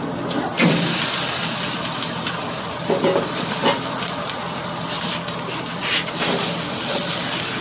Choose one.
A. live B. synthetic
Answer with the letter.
A